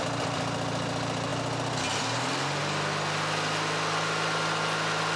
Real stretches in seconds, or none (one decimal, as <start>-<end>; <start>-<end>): 0.0-5.2